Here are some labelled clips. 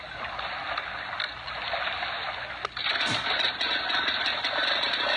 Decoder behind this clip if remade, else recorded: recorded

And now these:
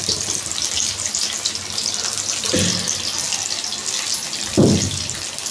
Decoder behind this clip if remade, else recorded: recorded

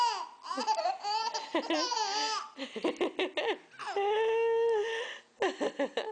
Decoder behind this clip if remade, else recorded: recorded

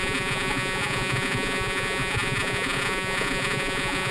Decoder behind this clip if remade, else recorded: remade, vocoder, Vocos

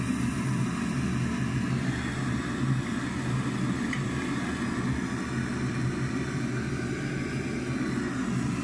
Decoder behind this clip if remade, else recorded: recorded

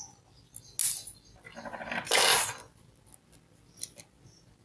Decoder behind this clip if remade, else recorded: recorded